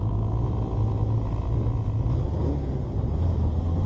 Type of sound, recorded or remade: recorded